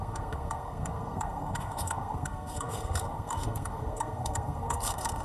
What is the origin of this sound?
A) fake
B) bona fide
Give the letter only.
A